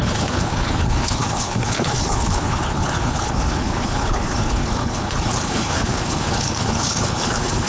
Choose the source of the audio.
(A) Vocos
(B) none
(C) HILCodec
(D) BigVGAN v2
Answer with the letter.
C